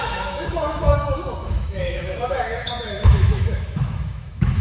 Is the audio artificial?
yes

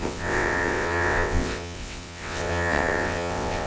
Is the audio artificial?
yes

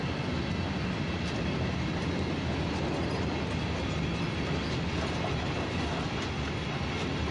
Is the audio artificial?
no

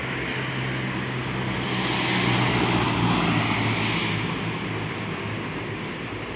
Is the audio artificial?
no